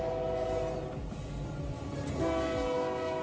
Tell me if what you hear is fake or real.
real